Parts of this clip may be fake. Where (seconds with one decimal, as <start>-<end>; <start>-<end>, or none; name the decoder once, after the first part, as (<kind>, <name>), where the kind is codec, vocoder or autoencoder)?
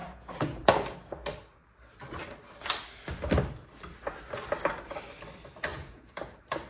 0.0-0.7 (vocoder, Vocos); 5.7-6.3